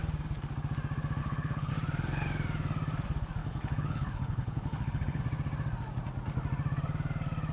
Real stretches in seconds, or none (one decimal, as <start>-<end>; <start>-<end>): 0.0-1.2; 1.7-3.4; 5.2-7.5